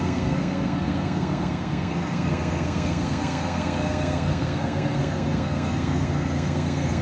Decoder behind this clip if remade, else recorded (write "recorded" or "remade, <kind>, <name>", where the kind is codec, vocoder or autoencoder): remade, codec, SNAC